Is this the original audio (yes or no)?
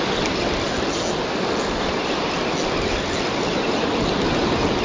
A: yes